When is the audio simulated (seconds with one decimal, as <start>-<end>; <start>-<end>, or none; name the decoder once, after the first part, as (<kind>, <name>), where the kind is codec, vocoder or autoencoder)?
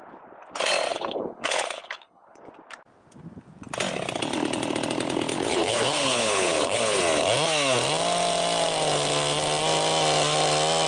0.9-2.4 (codec, HILCodec); 5.3-7.0